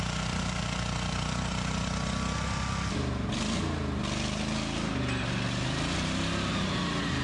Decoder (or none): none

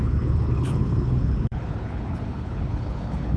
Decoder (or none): codec, HILCodec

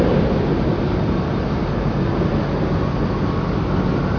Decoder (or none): none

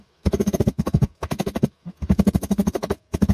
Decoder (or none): codec, SNAC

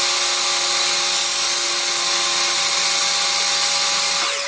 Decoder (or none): none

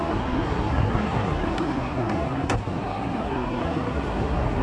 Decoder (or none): codec, SNAC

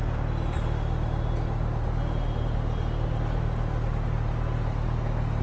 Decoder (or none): none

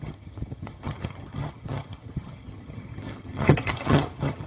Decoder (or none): vocoder, HiFi-GAN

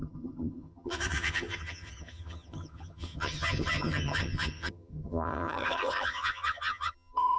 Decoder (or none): vocoder, HiFi-GAN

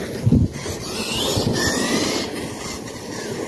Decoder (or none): none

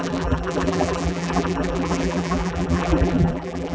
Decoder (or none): vocoder, BigVGAN v2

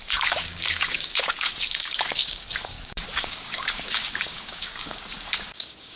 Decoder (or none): codec, DAC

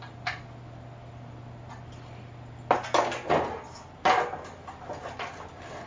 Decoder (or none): none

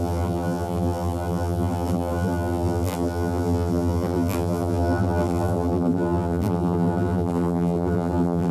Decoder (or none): vocoder, BigVGAN v2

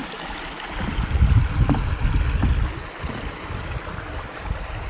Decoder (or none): none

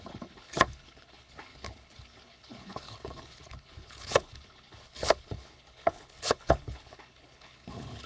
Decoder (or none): codec, HILCodec